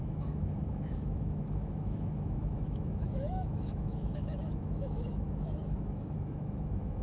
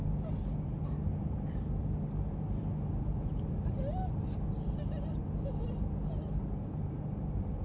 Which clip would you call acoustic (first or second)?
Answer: second